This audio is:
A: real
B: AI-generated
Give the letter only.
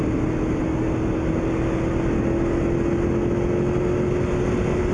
A